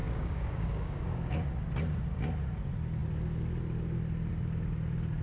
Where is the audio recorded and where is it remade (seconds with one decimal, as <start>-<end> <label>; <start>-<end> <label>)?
0.0-1.6 remade; 1.6-5.2 recorded